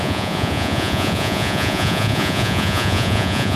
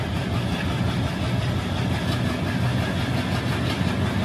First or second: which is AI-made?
first